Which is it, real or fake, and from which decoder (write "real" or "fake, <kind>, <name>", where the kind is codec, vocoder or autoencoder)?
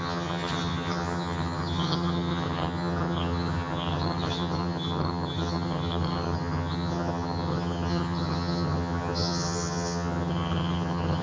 fake, vocoder, HiFi-GAN